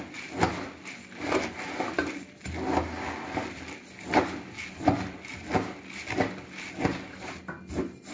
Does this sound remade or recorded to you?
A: recorded